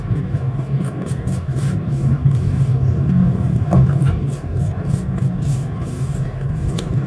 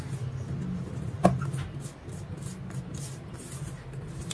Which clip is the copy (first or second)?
first